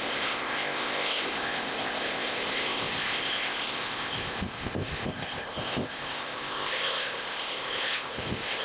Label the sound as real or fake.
fake